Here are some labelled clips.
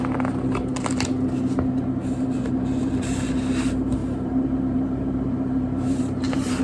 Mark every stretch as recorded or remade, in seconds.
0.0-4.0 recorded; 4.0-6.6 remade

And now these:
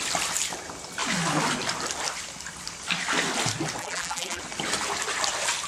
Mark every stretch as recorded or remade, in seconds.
0.0-3.8 recorded; 3.8-4.4 remade; 4.4-5.7 recorded

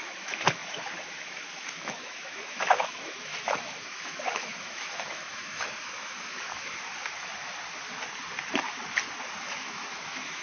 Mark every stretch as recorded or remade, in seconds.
0.0-6.9 remade; 6.9-9.3 recorded; 9.3-10.4 remade

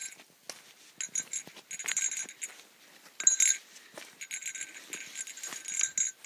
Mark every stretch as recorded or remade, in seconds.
0.0-6.3 recorded

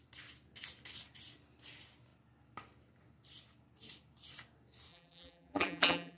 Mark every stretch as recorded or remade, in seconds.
0.0-4.9 recorded; 4.9-6.2 remade

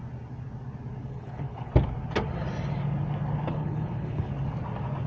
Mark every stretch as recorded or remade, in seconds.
0.0-1.0 recorded; 1.0-1.7 remade; 1.7-3.5 recorded; 3.5-4.3 remade; 4.3-5.1 recorded

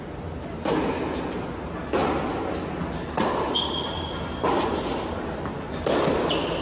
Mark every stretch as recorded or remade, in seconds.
0.0-6.6 recorded

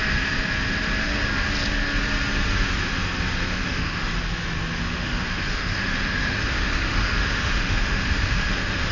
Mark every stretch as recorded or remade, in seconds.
0.0-3.5 recorded; 3.5-4.1 remade; 4.1-4.8 recorded; 4.8-8.9 remade